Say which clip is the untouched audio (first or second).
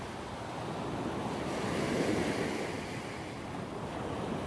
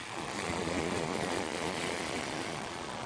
first